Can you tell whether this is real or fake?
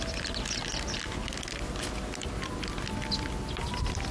real